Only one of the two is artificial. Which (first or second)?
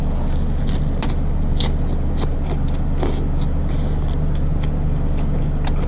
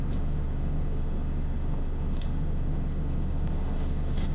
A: second